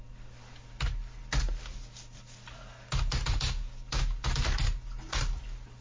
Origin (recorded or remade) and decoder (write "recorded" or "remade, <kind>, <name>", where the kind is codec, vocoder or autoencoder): recorded